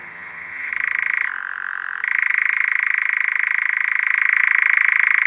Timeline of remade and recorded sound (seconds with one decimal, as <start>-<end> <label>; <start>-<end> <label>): 0.0-0.7 remade; 0.7-5.3 recorded